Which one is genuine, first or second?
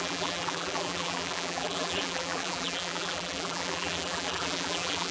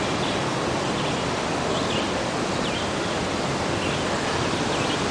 second